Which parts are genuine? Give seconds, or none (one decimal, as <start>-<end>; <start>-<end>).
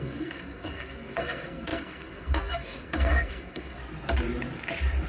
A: 3.8-5.1